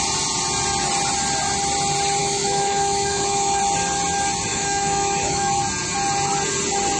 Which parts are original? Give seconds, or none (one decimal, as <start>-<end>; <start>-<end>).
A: 0.0-2.2; 3.6-4.5; 5.6-7.0